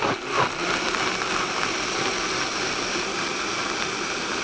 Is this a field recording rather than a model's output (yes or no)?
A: yes